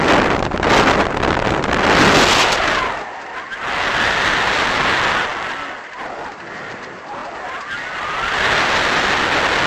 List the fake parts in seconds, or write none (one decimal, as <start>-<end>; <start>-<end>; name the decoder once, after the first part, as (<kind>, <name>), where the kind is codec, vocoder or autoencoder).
none